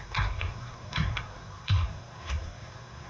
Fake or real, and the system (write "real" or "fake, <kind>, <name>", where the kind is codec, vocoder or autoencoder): fake, codec, SNAC